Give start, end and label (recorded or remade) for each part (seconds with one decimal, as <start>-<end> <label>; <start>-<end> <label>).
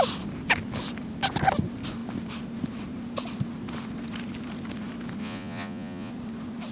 0.0-5.2 recorded; 5.2-6.1 remade; 6.1-6.7 recorded